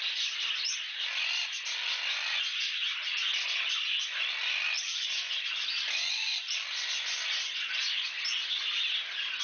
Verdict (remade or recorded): recorded